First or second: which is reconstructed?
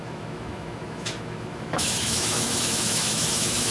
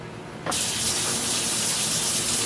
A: first